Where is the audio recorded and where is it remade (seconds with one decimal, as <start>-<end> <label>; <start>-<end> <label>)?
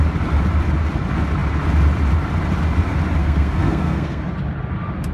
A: 0.0-3.2 recorded; 3.2-4.2 remade; 4.2-5.1 recorded